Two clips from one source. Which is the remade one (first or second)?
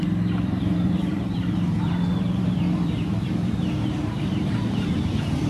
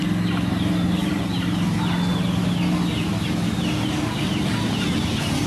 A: first